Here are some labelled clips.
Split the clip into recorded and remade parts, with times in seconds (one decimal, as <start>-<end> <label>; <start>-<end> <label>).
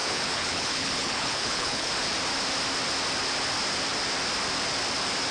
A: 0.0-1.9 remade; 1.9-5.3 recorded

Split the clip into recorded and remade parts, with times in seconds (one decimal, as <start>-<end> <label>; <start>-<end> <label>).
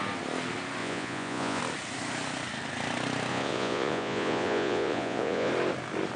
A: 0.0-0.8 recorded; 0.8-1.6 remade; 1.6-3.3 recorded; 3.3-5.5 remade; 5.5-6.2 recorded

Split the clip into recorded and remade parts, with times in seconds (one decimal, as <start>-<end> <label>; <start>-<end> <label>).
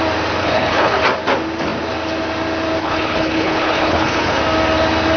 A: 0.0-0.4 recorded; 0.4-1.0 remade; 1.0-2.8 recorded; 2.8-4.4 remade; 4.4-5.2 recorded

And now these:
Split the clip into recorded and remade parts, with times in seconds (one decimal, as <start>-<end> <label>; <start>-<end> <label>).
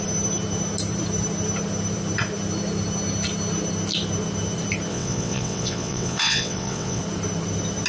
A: 0.0-4.9 recorded; 4.9-7.0 remade; 7.0-7.9 recorded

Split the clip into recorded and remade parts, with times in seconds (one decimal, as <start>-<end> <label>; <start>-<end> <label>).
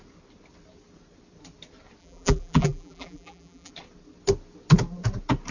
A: 0.0-2.0 recorded; 2.0-3.7 remade; 3.7-5.5 recorded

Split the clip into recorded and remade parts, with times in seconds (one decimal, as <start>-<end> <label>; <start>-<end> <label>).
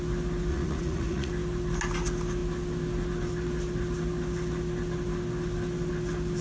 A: 0.0-0.5 recorded; 0.5-1.3 remade; 1.3-6.4 recorded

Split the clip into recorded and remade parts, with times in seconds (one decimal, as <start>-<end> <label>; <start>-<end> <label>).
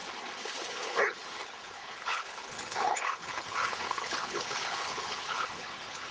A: 0.0-0.7 recorded; 0.7-6.1 remade